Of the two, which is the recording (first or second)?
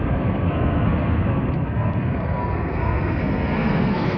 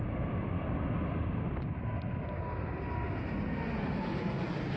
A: second